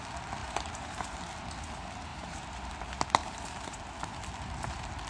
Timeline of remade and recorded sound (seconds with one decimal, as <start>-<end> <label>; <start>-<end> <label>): 0.0-0.4 recorded; 0.4-1.3 remade; 1.3-2.1 recorded; 2.1-2.7 remade; 2.7-3.2 recorded; 3.2-3.8 remade; 3.8-5.1 recorded

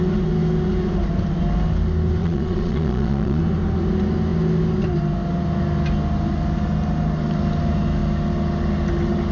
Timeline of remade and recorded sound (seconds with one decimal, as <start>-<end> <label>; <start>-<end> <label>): 0.0-2.2 recorded; 2.2-3.4 remade; 3.4-9.3 recorded